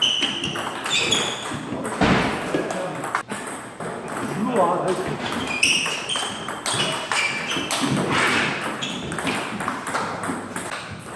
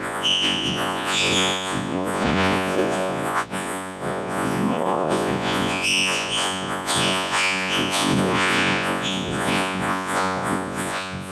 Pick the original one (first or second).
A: first